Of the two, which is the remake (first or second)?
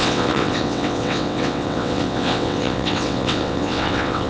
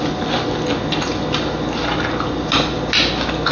first